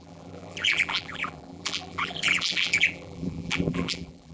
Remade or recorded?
remade